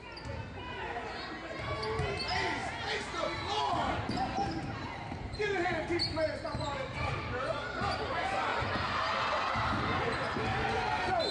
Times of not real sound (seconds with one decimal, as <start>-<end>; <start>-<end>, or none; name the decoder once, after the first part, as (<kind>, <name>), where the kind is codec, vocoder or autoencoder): none